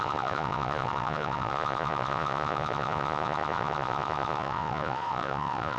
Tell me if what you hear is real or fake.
fake